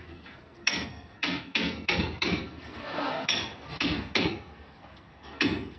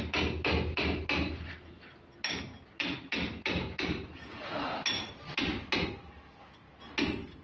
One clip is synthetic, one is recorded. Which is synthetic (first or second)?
first